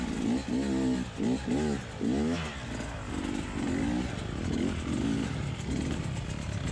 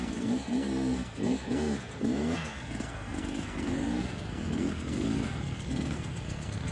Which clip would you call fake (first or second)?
second